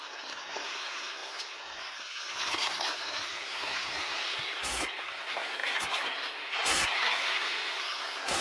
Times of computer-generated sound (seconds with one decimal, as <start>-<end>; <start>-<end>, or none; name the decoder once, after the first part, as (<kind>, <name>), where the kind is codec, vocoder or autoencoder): 0.0-8.4 (codec, SNAC)